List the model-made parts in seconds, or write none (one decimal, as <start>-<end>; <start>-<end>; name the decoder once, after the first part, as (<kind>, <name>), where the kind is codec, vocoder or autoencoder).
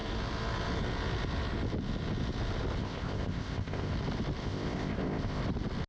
2.8-3.9 (codec, ZipCodec); 4.4-5.4